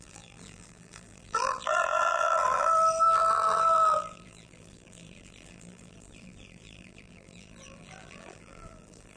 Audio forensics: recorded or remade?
remade